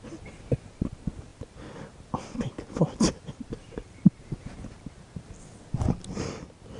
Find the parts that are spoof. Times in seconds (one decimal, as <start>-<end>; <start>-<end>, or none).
none